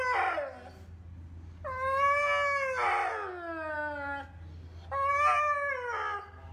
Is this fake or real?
real